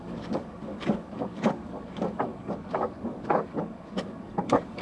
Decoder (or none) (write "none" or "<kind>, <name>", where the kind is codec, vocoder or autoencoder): codec, DAC